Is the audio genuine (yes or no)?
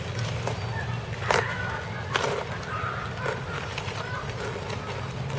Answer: yes